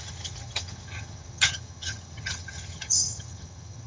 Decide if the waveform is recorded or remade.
remade